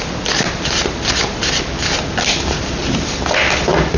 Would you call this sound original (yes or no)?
yes